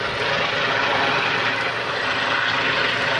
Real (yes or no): yes